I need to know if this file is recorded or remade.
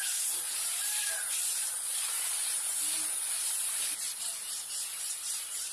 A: remade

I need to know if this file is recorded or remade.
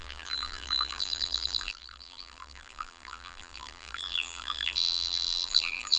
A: remade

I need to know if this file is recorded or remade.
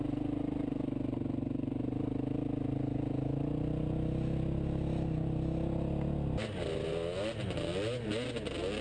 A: recorded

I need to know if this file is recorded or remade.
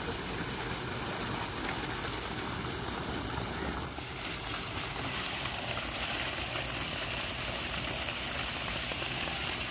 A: recorded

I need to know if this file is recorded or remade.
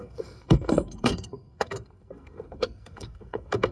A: remade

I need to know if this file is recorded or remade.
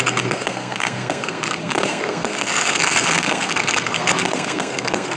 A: remade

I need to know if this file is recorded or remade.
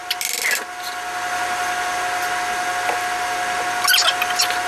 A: recorded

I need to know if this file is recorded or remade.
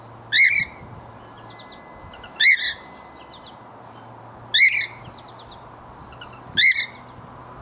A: recorded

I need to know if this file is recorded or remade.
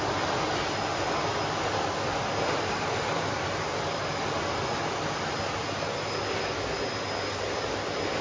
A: recorded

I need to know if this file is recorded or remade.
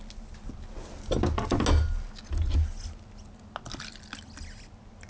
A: recorded